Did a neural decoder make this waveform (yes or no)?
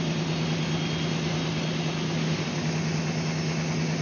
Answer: no